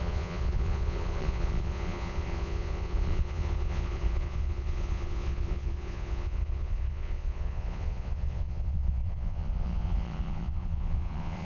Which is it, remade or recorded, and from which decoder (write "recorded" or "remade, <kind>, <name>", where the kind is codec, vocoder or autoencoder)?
remade, vocoder, Vocos